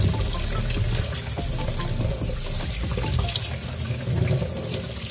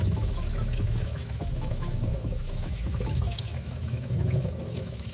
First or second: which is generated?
second